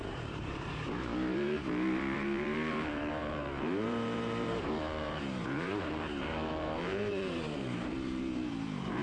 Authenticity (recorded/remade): remade